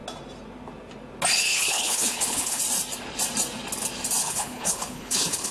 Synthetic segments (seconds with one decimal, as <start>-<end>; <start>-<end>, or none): 1.5-2.6; 4.2-5.5